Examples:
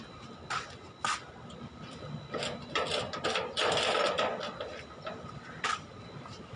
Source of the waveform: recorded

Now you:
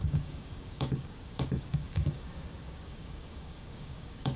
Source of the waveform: remade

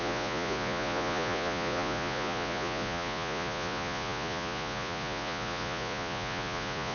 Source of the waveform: remade